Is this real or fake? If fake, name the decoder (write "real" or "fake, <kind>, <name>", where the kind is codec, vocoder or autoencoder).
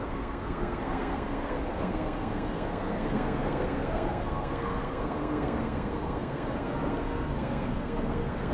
fake, codec, SNAC